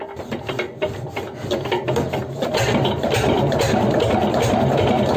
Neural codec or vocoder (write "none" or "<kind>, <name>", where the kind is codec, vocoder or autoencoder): none